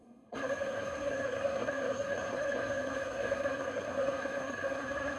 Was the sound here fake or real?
fake